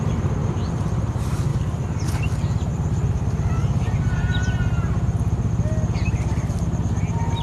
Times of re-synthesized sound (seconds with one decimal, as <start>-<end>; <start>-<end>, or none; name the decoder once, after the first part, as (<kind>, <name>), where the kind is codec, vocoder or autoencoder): none